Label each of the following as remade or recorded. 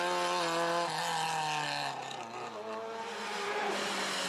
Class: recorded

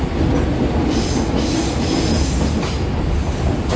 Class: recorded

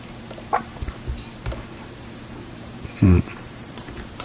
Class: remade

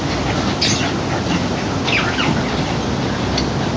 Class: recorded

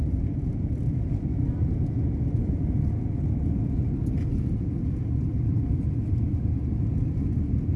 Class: recorded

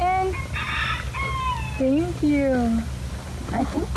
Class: recorded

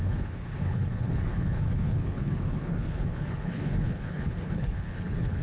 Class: remade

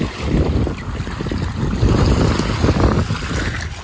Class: recorded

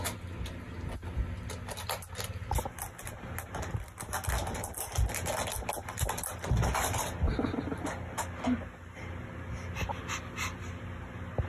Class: recorded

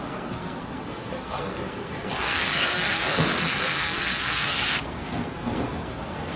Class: remade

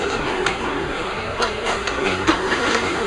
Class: remade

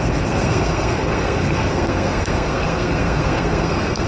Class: remade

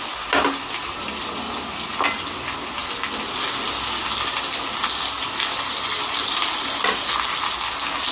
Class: recorded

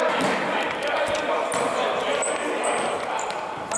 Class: recorded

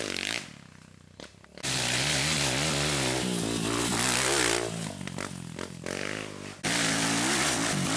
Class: recorded